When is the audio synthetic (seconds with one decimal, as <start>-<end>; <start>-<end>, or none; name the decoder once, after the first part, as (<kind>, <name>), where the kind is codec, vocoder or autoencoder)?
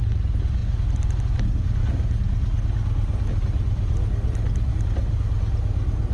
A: none